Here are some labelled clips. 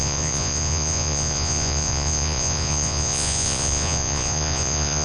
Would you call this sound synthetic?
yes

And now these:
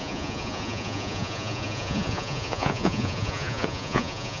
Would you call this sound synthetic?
yes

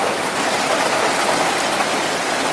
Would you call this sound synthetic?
no